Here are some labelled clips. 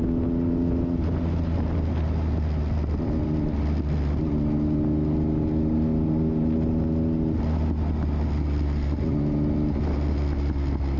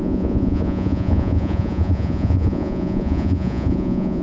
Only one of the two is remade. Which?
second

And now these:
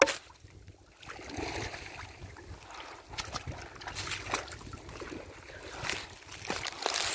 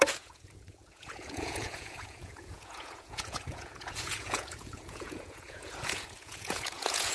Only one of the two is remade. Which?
second